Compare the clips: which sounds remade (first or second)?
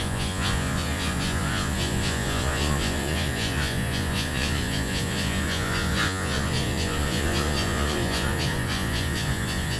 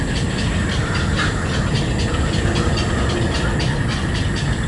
first